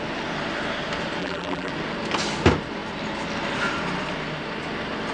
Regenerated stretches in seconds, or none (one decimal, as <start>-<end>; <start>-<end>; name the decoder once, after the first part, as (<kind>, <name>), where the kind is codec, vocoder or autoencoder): 1.2-1.7 (vocoder, BigVGAN v2)